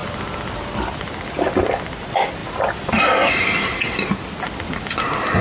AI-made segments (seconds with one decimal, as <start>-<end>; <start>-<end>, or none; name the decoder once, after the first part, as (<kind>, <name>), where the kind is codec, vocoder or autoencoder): none